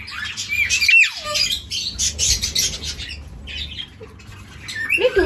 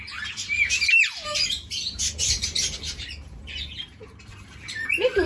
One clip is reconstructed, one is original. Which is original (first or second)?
first